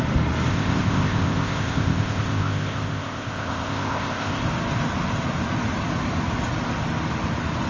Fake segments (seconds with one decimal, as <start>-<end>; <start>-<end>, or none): 0.5-4.4